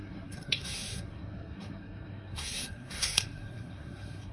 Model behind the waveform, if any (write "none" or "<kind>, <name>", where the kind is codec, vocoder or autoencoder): codec, SNAC